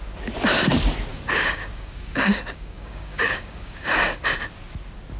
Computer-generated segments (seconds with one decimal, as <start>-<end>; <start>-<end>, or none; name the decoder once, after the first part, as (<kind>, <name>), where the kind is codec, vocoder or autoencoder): 1.1-4.2 (codec, DAC)